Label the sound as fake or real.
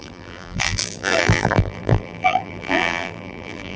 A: fake